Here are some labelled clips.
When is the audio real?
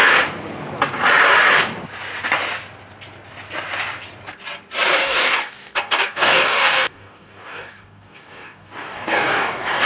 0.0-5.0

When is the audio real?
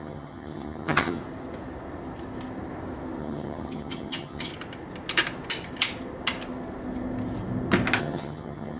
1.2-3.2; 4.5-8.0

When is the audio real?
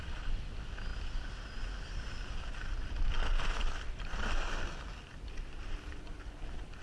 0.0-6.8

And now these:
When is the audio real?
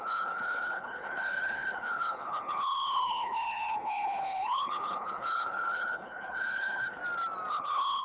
7.0-7.5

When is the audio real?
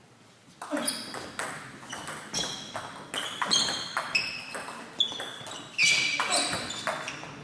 0.0-7.4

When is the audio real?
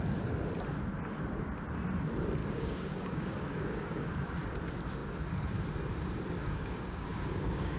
0.0-2.4; 4.2-6.4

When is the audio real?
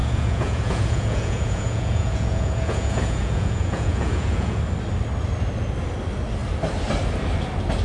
4.6-7.8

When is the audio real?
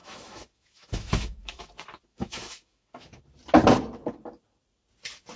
1.7-2.1; 3.2-5.4